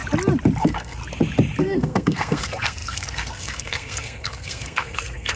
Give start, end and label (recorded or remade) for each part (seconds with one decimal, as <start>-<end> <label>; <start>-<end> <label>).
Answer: 0.0-0.6 recorded; 0.6-1.0 remade; 1.0-1.6 recorded; 1.6-5.4 remade